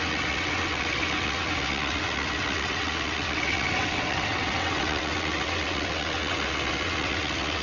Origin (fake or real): fake